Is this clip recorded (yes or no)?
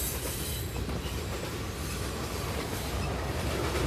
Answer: yes